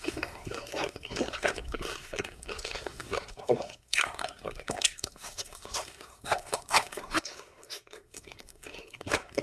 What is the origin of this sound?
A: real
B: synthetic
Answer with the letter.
B